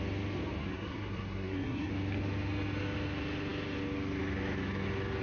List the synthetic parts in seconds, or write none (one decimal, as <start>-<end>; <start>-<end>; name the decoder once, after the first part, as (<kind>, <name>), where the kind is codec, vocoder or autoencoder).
0.6-1.9 (codec, SNAC)